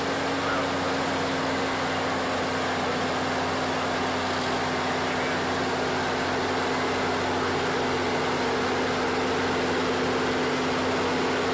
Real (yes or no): yes